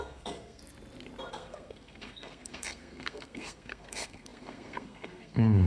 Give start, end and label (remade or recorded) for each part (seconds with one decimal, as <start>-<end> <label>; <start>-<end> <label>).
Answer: 0.0-0.6 remade; 0.6-1.3 recorded; 1.3-5.7 remade

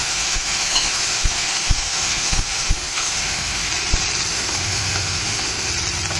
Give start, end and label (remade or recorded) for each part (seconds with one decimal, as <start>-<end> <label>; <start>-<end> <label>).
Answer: 0.0-3.7 remade; 3.7-4.3 recorded; 4.3-5.7 remade; 5.7-6.2 recorded

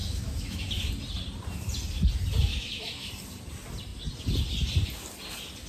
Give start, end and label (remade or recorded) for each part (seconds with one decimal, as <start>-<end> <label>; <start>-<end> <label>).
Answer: 0.0-0.9 remade; 0.9-2.5 recorded; 2.5-3.1 remade; 3.1-5.7 recorded

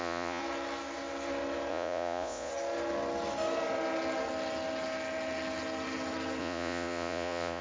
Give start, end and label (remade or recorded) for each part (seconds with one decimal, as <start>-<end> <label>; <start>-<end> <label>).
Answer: 0.0-0.4 remade; 0.4-1.7 recorded; 1.7-2.5 remade; 2.5-6.4 recorded; 6.4-7.6 remade

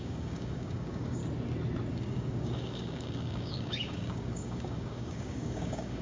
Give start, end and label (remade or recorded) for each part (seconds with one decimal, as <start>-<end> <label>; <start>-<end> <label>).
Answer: 0.0-1.2 remade; 1.2-1.9 recorded; 1.9-6.0 remade